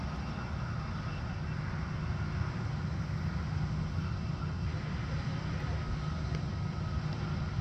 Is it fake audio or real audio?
real